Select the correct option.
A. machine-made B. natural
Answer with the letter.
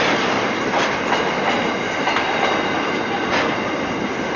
B